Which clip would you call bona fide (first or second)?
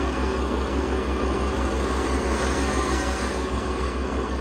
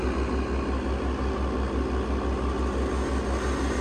second